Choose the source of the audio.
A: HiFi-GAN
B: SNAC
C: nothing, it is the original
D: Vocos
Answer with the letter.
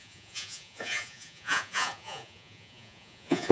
D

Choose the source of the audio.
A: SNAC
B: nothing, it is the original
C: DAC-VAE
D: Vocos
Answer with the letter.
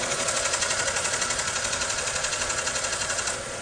D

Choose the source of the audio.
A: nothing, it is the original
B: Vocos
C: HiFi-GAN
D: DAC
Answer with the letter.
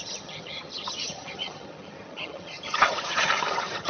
C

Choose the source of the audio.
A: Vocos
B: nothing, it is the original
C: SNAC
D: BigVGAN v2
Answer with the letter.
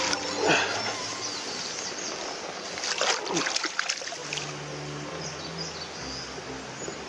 B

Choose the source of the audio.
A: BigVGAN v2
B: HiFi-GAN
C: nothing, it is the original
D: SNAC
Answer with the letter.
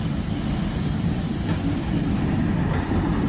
C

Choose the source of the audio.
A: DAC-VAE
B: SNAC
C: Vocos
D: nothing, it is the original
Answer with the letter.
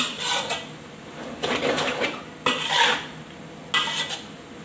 D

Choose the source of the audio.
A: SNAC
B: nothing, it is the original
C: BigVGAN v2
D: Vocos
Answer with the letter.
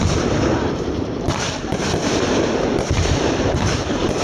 C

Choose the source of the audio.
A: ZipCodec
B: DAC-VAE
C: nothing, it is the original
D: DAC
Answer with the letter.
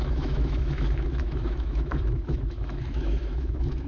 B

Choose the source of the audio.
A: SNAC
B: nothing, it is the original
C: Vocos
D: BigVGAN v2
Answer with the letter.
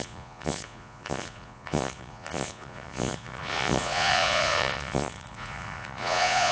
C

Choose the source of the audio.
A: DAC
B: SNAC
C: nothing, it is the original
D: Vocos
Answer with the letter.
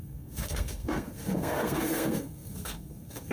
B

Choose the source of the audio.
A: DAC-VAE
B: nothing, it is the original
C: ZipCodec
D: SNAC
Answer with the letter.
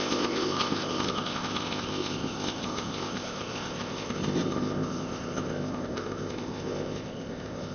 C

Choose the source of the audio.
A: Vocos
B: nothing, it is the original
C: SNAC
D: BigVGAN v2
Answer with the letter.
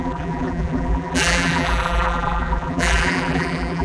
D